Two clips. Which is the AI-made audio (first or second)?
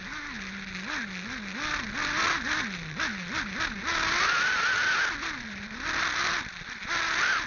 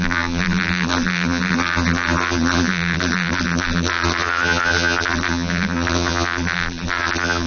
second